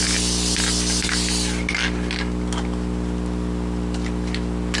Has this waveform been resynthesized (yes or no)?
no